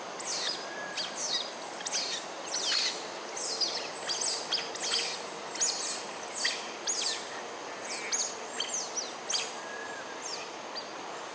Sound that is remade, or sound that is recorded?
recorded